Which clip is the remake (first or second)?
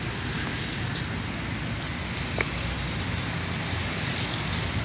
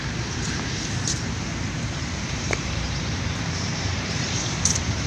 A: second